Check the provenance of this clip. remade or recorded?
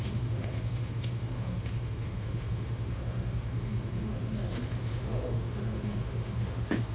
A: remade